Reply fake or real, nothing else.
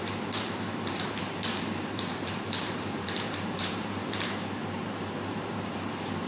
fake